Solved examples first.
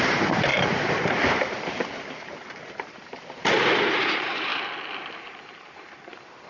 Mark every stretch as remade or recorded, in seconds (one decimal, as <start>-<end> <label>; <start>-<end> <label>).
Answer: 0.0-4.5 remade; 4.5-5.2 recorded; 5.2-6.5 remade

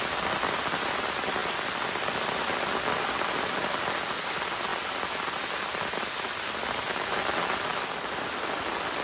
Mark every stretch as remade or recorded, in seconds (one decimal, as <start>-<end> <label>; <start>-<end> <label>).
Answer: 0.0-9.0 recorded

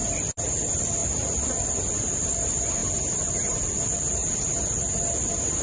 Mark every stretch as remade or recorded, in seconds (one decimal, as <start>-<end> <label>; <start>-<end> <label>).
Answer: 0.0-4.2 recorded; 4.2-4.7 remade; 4.7-5.6 recorded

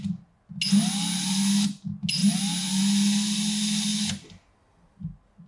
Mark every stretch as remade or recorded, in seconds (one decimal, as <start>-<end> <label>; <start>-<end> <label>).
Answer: 0.0-5.5 recorded

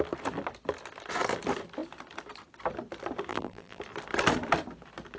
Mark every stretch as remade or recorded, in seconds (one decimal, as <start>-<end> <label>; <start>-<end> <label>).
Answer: 0.0-3.3 recorded; 3.3-3.8 remade; 3.8-5.2 recorded

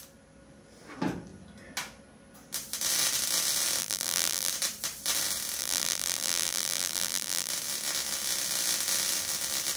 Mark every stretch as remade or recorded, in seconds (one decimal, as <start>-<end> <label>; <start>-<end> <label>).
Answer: 0.0-3.8 recorded; 3.8-4.5 remade; 4.5-5.6 recorded; 5.6-7.5 remade; 7.5-9.8 recorded

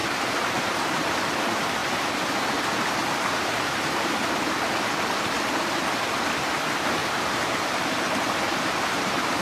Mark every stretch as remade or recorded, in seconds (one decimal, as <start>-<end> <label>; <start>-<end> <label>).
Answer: 0.0-1.3 remade; 1.3-3.0 recorded; 3.0-4.3 remade; 4.3-7.0 recorded; 7.0-9.4 remade

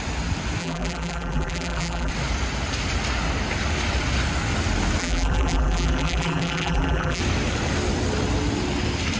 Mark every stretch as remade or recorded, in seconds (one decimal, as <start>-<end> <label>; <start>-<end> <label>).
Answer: 0.0-0.6 recorded; 0.6-2.1 remade; 2.1-5.0 recorded; 5.0-7.2 remade; 7.2-9.2 recorded